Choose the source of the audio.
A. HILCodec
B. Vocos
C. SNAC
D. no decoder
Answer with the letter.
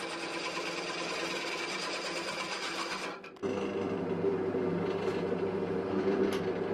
D